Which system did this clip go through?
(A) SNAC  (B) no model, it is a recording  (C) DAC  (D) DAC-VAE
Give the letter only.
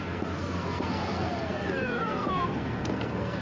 A